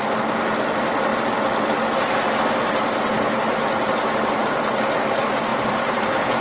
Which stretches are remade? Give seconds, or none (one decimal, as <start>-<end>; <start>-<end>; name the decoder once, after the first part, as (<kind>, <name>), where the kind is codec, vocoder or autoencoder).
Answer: 5.5-6.4 (vocoder, BigVGAN v2)